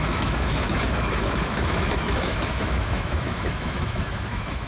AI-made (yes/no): yes